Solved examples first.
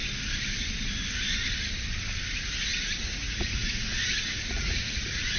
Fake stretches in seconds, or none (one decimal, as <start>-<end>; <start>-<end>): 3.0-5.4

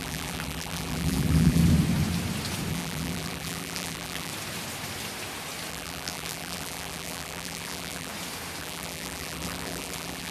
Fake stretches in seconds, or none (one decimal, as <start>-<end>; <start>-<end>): 0.0-1.6; 2.7-4.3; 5.7-8.1; 8.6-10.3

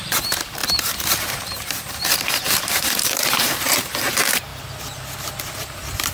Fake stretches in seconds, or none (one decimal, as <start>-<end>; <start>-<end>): 0.0-4.5; 5.4-6.1